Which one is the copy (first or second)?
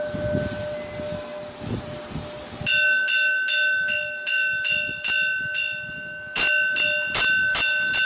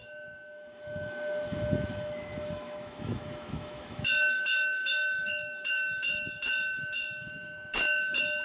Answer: second